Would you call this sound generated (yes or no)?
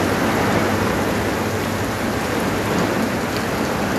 no